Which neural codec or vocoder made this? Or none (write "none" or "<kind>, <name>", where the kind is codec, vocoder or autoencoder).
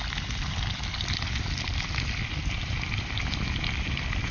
none